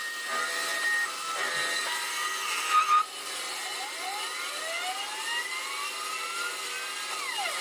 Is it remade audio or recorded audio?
recorded